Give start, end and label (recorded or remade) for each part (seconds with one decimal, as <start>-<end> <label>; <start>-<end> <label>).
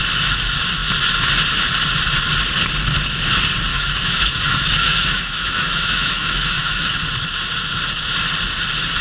0.0-3.7 recorded; 3.7-7.0 remade; 7.0-9.0 recorded